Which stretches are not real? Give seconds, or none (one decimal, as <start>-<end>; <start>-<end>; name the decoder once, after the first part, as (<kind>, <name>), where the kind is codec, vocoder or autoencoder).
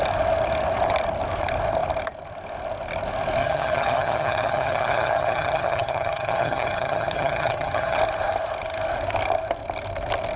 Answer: 3.4-8.0 (vocoder, HiFi-GAN)